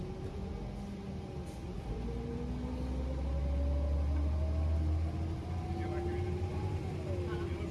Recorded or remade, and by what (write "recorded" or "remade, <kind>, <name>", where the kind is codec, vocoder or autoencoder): recorded